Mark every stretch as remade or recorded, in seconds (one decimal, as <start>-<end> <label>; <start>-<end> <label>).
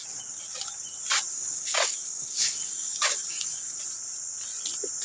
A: 0.0-1.3 recorded; 1.3-3.8 remade; 3.8-5.0 recorded